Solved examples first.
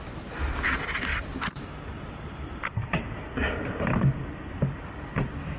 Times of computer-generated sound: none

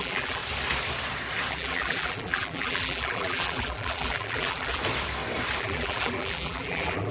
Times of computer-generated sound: 0.0-0.4 (vocoder, BigVGAN v2); 1.5-4.8; 5.6-7.1